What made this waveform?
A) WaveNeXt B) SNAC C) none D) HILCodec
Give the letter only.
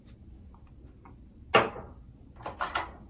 C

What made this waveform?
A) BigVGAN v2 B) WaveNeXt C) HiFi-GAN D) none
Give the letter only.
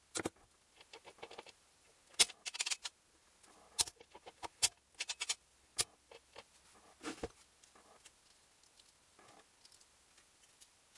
D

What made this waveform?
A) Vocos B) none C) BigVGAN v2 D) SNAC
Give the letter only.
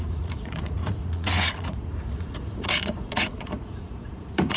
A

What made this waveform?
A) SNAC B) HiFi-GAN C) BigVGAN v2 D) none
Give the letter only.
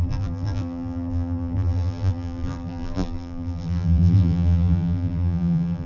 C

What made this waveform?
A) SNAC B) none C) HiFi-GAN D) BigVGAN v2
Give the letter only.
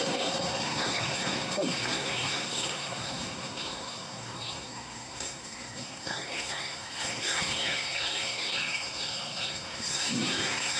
A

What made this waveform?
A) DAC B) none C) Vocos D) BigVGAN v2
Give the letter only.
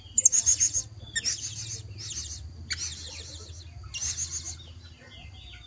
B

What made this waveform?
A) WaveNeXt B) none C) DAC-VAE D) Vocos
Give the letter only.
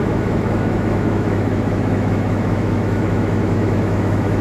C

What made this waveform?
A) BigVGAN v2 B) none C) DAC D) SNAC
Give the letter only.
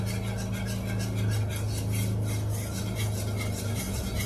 B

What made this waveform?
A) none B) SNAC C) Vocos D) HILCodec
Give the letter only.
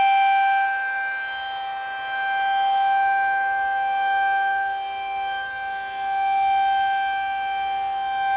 A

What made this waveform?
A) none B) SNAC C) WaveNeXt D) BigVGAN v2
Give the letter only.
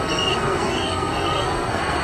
B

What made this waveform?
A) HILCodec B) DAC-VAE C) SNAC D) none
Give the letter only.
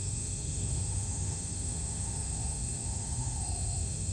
B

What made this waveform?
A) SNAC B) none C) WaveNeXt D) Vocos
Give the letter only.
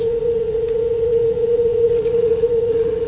D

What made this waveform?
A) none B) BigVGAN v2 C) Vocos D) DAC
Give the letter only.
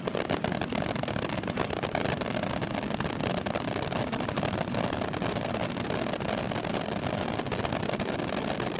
A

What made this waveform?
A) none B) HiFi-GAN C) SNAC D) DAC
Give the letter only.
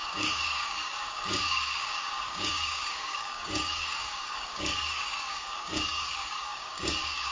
D